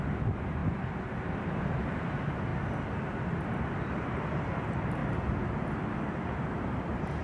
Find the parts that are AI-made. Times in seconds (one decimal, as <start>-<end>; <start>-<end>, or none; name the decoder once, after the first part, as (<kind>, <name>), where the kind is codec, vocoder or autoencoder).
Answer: 0.0-0.6 (vocoder, BigVGAN v2); 1.7-2.5; 3.0-5.0; 5.8-7.2